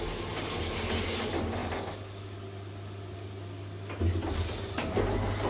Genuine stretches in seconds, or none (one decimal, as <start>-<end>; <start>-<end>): 0.0-5.5